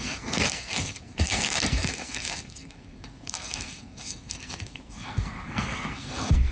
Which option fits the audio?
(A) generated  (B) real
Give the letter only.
A